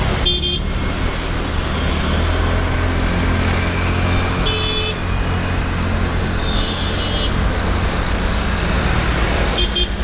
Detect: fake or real real